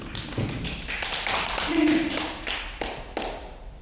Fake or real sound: real